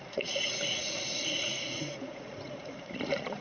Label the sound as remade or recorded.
remade